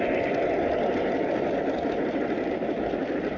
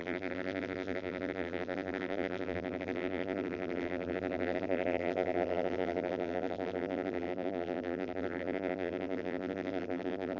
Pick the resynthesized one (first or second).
second